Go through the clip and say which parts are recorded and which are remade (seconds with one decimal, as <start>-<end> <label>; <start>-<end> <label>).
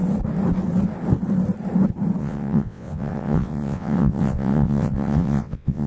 0.0-2.2 recorded; 2.2-5.9 remade